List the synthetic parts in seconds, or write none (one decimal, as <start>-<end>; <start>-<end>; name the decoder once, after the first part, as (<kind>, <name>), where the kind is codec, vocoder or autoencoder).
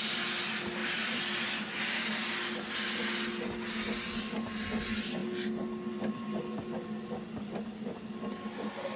none